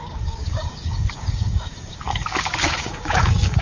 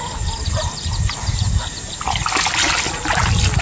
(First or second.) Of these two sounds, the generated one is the first